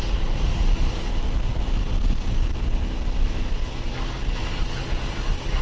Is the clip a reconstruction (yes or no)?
no